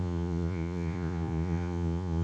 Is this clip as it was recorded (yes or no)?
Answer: no